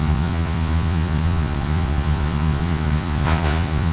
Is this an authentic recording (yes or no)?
no